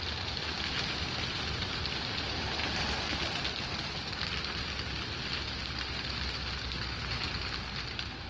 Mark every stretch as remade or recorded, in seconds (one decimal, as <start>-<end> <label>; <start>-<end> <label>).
0.0-8.3 recorded